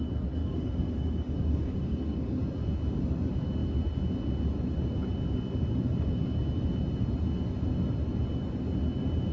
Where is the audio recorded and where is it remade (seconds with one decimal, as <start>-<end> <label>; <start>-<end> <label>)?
0.0-0.4 recorded; 0.4-2.4 remade; 2.4-9.3 recorded